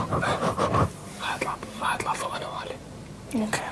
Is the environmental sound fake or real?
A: fake